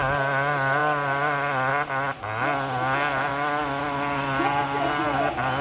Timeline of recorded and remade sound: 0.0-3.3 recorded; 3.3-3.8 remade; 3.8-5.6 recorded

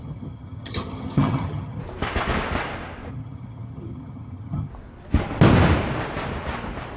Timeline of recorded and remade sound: 0.0-1.8 remade; 1.8-3.1 recorded; 3.1-4.7 remade; 4.7-7.0 recorded